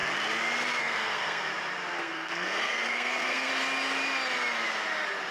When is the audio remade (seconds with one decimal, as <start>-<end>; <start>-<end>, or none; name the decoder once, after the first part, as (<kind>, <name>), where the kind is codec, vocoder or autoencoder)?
0.8-1.5 (codec, SNAC); 2.0-3.5